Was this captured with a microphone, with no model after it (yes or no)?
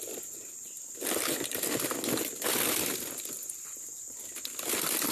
yes